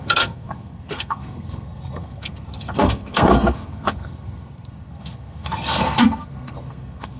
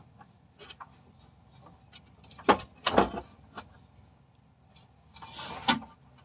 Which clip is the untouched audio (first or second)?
second